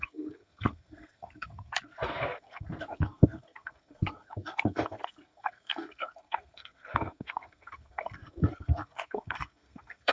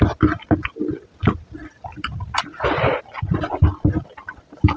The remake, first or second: first